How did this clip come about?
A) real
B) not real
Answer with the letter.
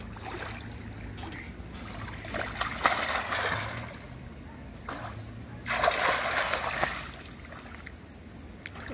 A